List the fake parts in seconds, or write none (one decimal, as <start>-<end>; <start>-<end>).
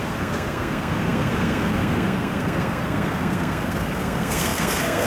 0.0-5.1